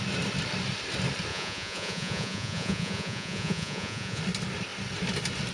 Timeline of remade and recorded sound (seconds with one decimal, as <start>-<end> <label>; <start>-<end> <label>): 0.0-1.3 recorded; 1.3-4.2 remade; 4.2-5.5 recorded